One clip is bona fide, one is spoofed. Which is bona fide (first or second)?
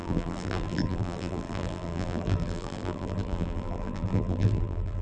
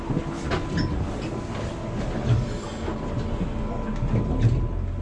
second